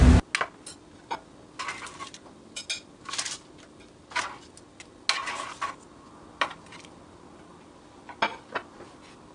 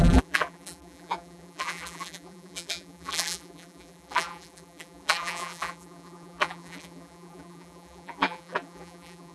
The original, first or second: first